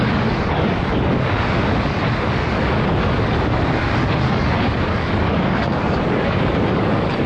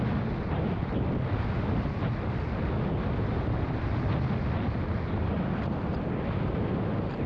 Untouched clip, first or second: second